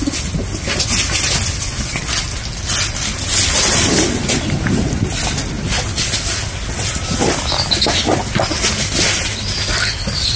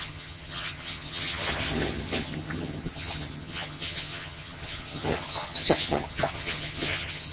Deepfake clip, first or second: second